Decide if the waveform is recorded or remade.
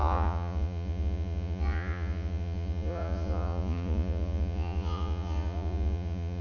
remade